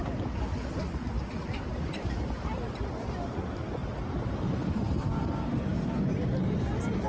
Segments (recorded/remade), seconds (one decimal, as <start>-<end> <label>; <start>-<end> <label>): 0.0-7.1 recorded